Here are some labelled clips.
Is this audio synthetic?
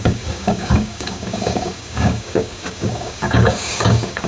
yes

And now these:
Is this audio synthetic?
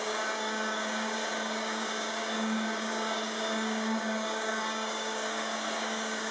yes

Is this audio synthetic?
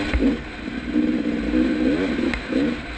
no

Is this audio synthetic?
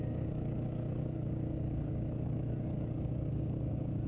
yes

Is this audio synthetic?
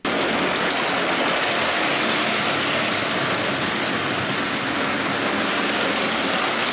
no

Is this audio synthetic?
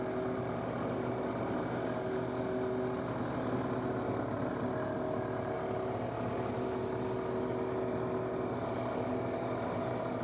no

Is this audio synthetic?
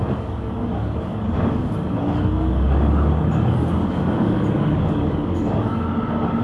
yes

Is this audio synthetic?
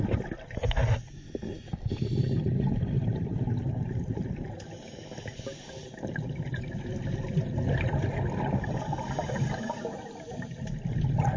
no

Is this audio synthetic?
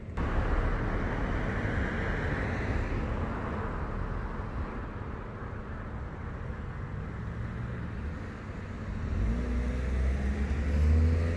no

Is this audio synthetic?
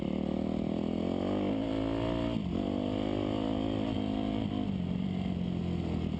no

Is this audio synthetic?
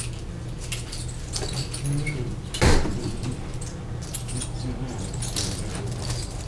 no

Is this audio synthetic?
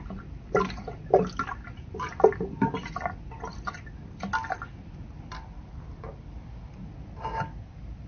no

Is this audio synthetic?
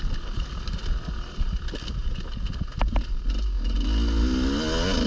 no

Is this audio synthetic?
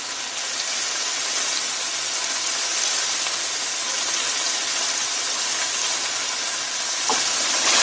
no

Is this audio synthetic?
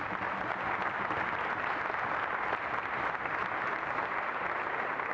no